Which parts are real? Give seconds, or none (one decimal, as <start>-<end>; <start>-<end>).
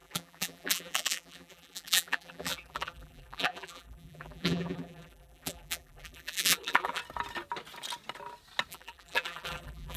7.0-8.7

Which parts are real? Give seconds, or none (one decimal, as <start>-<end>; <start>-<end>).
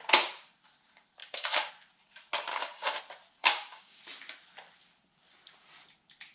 0.0-1.2; 1.7-2.5; 3.0-3.4; 4.0-6.3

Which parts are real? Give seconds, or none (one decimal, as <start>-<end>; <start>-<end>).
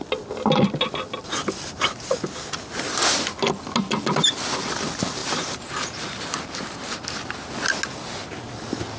0.0-5.2; 6.9-9.0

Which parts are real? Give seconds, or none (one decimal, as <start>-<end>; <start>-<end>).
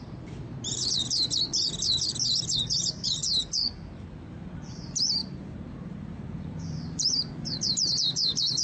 1.5-2.6; 3.2-4.1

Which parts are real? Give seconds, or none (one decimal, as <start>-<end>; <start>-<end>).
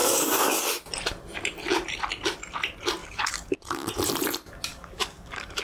0.6-3.0; 3.9-4.7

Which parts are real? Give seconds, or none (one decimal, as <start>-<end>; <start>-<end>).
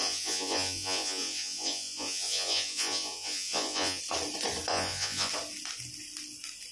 4.0-4.7; 5.3-6.7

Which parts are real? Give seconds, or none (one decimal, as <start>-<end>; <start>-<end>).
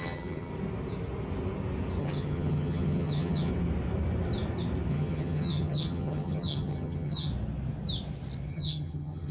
0.5-2.0; 3.5-4.9; 7.3-8.5